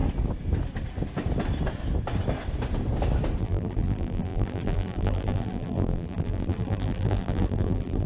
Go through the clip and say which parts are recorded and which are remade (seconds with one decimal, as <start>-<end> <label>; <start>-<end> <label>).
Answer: 0.0-3.4 recorded; 3.4-8.1 remade